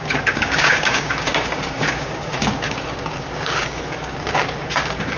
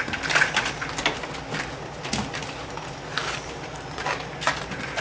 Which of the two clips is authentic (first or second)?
second